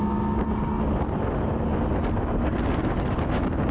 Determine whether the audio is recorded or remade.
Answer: recorded